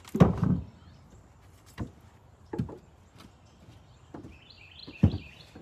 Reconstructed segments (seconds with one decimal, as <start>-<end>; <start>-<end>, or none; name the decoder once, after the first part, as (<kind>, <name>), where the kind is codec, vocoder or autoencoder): 2.2-3.0 (vocoder, BigVGAN v2); 4.8-5.6